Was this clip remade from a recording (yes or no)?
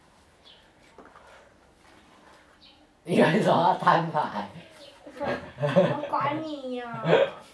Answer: no